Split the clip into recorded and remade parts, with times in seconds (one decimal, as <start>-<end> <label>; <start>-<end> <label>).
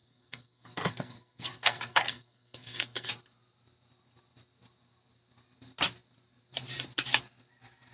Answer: 0.0-3.1 remade; 3.1-7.9 recorded